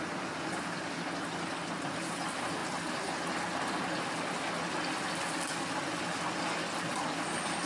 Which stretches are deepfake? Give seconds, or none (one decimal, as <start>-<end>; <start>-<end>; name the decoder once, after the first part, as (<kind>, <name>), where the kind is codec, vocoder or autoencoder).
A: none